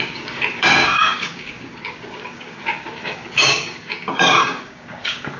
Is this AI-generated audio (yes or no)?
yes